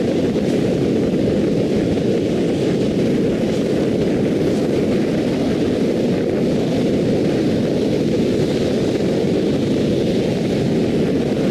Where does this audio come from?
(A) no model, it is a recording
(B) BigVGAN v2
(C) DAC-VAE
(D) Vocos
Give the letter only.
A